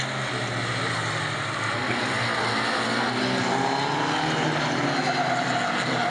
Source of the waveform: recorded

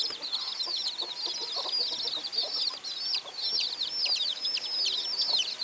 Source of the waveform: recorded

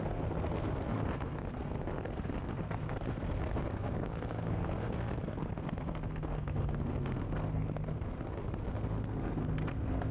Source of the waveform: remade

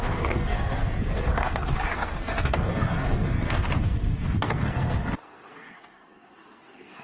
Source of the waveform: remade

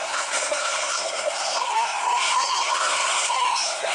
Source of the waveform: remade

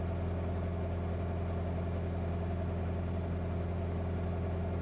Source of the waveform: recorded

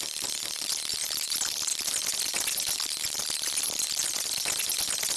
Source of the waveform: recorded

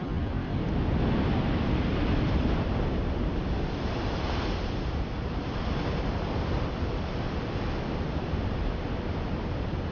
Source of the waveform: recorded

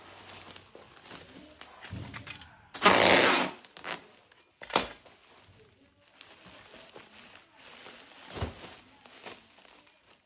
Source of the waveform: recorded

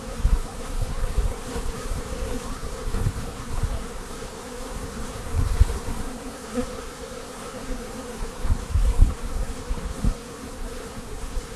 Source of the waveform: remade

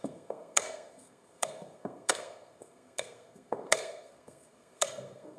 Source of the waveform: remade